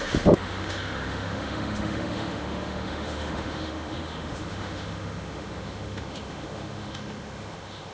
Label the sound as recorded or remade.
remade